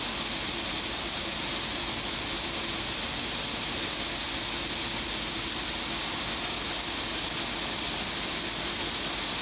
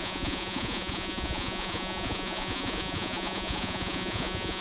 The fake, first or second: second